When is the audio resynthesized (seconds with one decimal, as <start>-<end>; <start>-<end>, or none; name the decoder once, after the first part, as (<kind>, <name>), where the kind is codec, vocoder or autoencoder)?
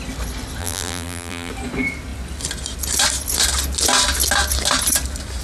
0.6-1.5 (vocoder, BigVGAN v2)